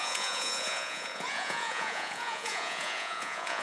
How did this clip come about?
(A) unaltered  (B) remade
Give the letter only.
B